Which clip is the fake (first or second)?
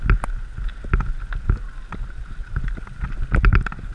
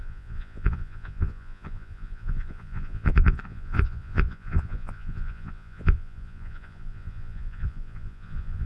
second